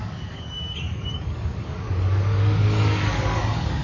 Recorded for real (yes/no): no